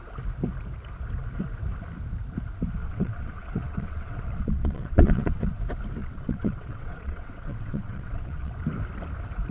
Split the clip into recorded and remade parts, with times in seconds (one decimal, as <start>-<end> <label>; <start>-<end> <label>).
0.0-2.8 recorded; 2.8-5.6 remade; 5.6-6.0 recorded; 6.0-8.5 remade; 8.5-9.5 recorded